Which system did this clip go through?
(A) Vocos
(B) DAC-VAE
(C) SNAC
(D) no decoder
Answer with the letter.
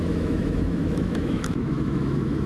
B